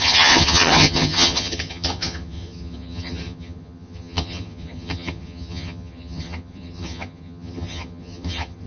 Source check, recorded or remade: remade